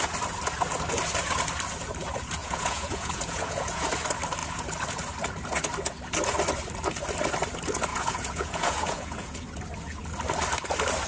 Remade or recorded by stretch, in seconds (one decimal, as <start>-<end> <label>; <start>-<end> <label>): 0.0-2.4 recorded; 2.4-3.8 remade; 3.8-7.9 recorded; 7.9-9.4 remade; 9.4-11.1 recorded